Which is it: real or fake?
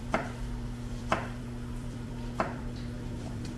fake